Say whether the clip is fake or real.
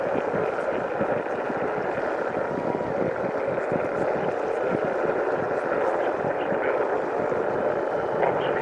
real